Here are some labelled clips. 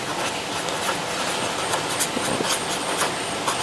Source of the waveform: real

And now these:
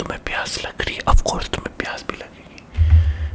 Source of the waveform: real